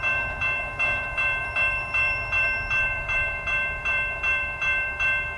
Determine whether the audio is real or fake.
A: fake